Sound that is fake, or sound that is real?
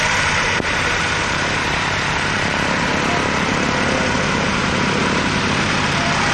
fake